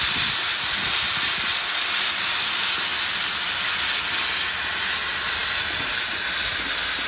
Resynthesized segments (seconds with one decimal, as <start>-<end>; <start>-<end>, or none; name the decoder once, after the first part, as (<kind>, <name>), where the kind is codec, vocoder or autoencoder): none